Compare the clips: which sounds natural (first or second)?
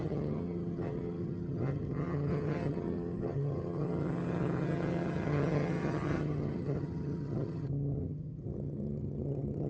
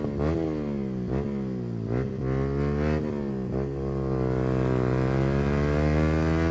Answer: second